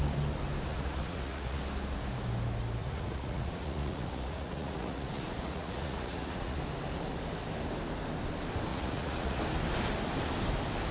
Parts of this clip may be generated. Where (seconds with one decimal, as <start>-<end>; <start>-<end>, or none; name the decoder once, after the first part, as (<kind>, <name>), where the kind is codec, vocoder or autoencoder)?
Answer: 0.7-1.6 (vocoder, Vocos); 2.8-6.6; 8.7-9.4